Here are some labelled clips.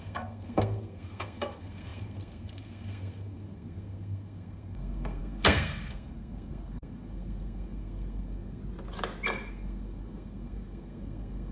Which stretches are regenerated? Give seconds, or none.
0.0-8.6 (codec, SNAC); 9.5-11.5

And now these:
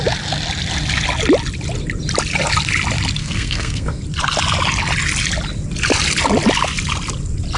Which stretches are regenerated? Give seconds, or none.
3.2-4.0 (codec, SNAC)

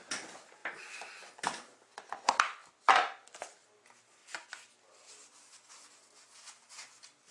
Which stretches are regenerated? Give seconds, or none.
none

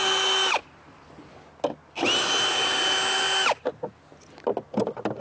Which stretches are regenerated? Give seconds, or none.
none

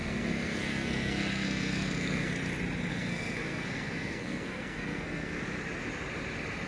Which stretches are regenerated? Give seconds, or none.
0.0-2.3 (codec, SNAC); 2.9-5.4

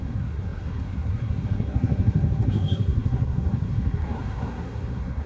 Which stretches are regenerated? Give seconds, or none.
0.0-5.3 (codec, SNAC)